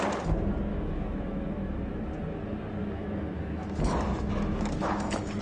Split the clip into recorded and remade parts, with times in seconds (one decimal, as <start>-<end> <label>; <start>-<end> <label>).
0.0-0.7 recorded; 0.7-1.8 remade; 1.8-2.8 recorded; 2.8-5.4 remade